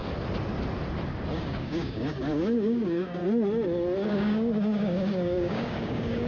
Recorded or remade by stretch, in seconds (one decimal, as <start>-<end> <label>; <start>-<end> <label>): 0.0-1.3 recorded; 1.3-3.2 remade; 3.2-4.1 recorded; 4.1-6.3 remade